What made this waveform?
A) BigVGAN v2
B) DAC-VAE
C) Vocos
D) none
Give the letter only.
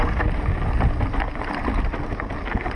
D